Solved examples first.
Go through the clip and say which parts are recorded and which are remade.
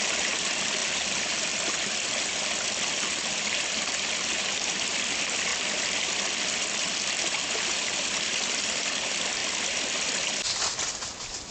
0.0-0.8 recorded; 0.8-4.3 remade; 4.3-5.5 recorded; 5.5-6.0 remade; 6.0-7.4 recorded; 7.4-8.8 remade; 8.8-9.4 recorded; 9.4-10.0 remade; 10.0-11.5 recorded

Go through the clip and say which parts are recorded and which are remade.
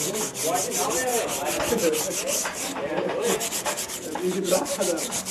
0.0-1.1 remade; 1.1-1.7 recorded; 1.7-5.3 remade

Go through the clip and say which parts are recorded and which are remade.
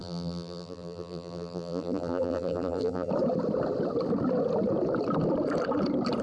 0.0-3.1 remade; 3.1-6.2 recorded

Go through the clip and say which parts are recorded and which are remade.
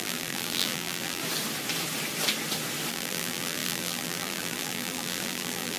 0.0-1.2 remade; 1.2-2.9 recorded; 2.9-5.8 remade